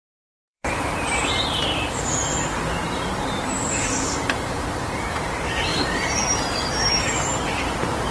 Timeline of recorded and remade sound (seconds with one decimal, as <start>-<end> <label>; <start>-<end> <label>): 0.0-4.5 remade; 4.5-5.7 recorded; 5.7-6.4 remade; 6.4-8.1 recorded